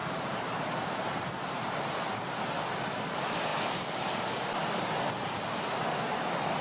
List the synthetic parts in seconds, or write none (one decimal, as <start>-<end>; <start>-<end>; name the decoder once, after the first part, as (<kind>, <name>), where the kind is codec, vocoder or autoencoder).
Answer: 0.0-2.5 (vocoder, BigVGAN v2)